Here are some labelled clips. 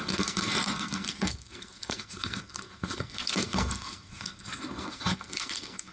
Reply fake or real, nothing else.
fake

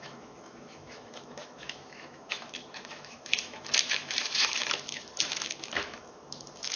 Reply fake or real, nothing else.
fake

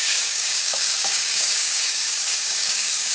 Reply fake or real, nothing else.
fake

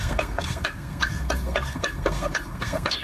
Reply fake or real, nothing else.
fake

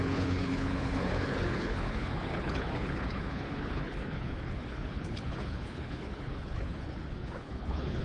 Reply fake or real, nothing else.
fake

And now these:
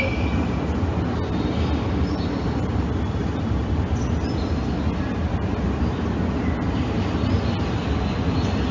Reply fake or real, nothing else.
real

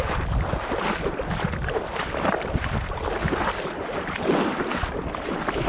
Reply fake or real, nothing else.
real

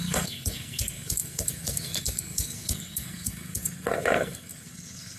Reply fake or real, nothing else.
fake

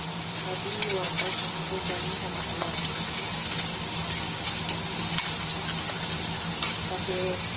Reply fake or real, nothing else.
real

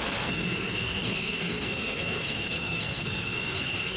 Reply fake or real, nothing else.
fake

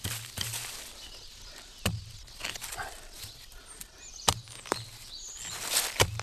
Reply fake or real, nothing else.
real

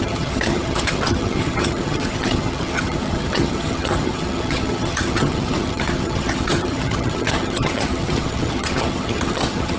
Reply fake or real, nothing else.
fake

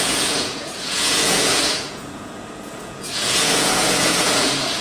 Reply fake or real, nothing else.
fake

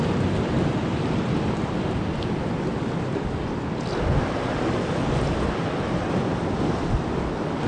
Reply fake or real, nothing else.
real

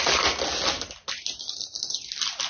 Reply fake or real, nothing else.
real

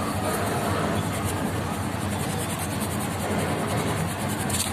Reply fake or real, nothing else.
real